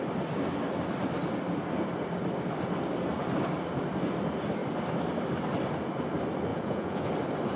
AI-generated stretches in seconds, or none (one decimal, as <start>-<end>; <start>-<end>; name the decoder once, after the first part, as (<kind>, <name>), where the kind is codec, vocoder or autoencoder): 6.5-7.1 (vocoder, Vocos)